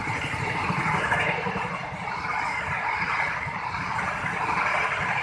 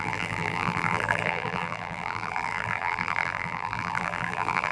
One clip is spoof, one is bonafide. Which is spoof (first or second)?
second